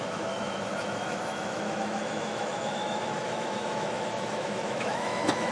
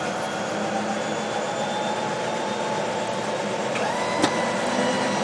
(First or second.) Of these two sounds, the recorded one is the second